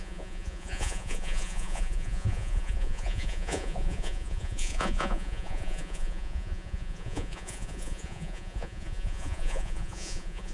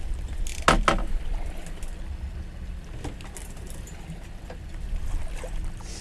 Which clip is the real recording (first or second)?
second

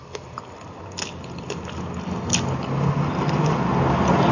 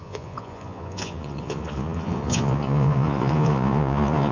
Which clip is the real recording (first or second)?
first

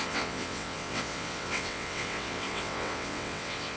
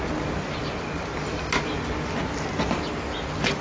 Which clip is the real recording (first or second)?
second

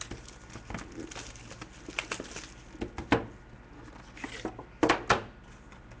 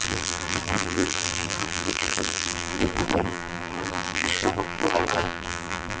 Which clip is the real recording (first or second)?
first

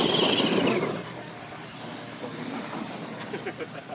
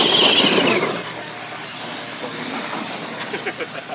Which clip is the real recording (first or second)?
second